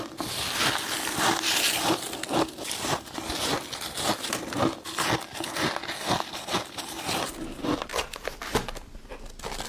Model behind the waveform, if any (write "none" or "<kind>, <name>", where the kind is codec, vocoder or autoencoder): none